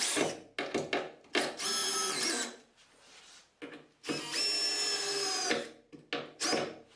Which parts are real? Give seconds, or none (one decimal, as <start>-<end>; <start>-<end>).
0.0-1.8; 3.2-7.0